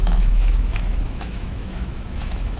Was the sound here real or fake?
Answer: fake